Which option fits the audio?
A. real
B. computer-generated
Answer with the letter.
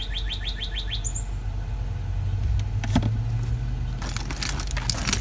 A